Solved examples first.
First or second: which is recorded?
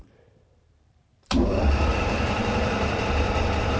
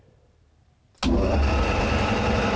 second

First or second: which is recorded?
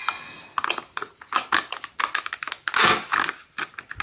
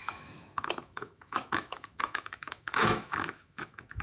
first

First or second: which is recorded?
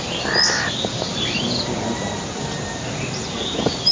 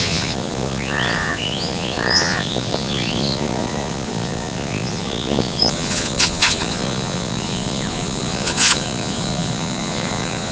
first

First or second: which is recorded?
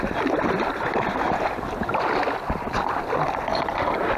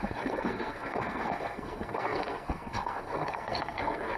first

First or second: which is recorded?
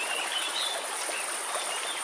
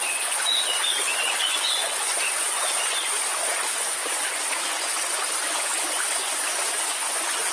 first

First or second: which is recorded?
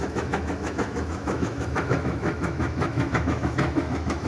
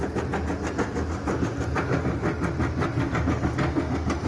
second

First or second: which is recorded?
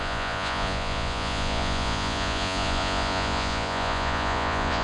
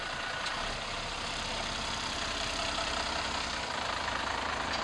second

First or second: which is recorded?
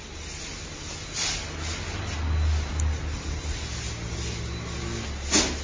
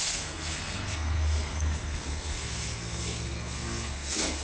first